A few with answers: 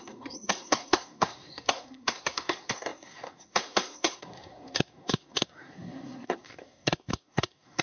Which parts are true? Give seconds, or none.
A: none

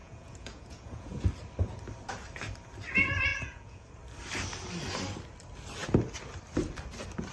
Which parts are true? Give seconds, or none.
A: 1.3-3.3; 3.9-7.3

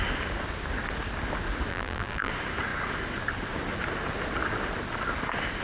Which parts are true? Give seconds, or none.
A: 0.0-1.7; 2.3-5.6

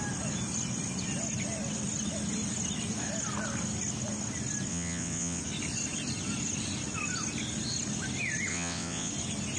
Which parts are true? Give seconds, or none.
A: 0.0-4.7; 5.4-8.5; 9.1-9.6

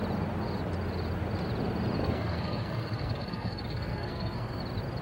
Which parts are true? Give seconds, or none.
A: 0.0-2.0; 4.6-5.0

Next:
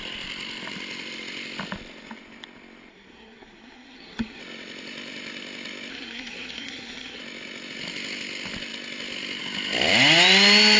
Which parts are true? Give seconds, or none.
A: 0.0-2.9; 4.4-5.9; 7.2-10.8